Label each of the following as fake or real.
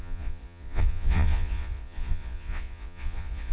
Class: fake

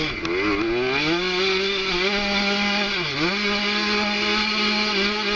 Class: real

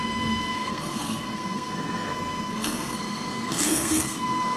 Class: fake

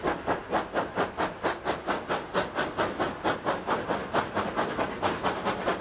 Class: real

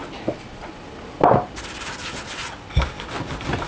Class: real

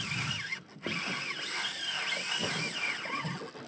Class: real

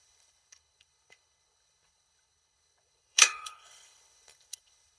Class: fake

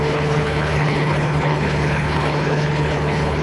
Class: fake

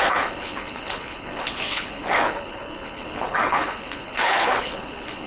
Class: fake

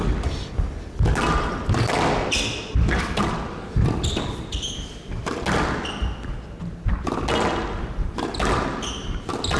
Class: real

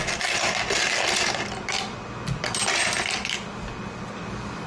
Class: real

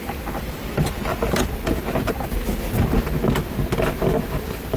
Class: real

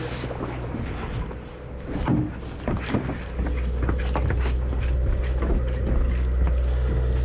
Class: real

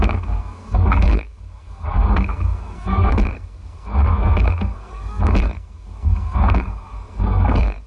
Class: fake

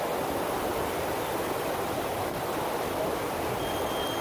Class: real